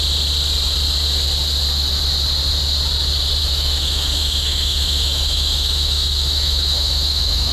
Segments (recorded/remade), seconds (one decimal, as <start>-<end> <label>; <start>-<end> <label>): 0.0-3.4 recorded; 3.4-7.5 remade